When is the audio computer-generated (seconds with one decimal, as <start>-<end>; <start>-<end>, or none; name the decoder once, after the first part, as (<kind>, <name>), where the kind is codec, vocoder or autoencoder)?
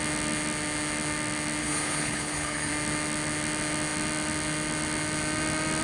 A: 1.6-2.7 (codec, HILCodec)